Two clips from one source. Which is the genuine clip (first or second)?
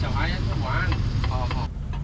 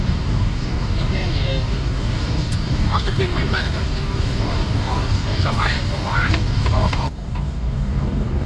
first